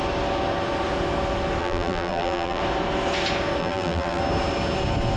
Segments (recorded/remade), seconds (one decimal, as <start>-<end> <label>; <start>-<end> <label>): 0.0-1.6 recorded; 1.6-2.6 remade; 2.6-3.6 recorded; 3.6-4.2 remade; 4.2-5.2 recorded